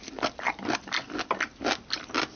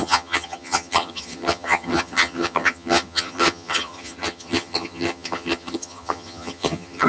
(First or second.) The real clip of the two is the first